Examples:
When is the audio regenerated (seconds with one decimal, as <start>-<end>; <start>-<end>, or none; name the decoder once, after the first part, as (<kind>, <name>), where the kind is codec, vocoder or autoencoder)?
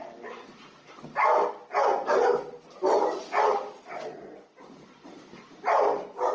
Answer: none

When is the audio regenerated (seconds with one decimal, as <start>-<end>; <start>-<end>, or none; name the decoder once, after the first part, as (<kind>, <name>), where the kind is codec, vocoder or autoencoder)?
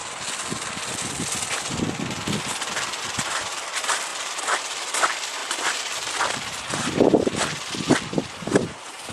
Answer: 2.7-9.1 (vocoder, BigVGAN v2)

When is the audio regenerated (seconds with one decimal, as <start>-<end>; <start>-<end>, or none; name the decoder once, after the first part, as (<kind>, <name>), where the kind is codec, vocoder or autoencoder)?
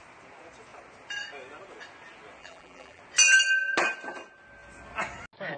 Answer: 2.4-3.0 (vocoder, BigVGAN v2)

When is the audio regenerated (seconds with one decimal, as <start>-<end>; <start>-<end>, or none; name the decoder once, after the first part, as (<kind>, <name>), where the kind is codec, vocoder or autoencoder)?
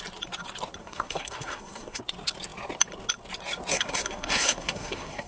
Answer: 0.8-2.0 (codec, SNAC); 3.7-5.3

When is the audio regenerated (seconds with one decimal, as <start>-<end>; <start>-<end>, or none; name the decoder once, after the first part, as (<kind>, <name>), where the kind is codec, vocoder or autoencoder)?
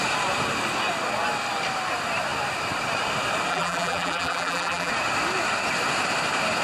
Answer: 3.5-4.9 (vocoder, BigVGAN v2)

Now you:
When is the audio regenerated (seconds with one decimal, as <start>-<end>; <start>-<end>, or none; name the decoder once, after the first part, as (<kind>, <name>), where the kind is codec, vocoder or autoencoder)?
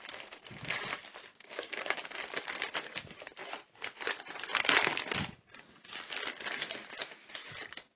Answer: 1.3-2.2 (codec, DAC)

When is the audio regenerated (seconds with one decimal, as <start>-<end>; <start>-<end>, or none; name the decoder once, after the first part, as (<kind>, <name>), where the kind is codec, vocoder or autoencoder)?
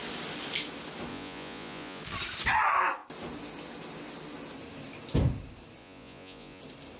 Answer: 1.1-2.0 (vocoder, Vocos); 5.8-6.6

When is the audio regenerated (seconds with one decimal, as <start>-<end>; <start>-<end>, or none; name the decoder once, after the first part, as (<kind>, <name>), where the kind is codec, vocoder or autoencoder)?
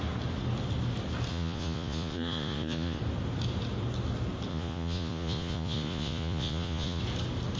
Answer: 1.3-3.0 (vocoder, Vocos); 4.5-7.0